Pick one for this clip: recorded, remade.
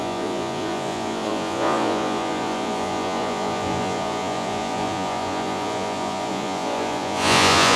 remade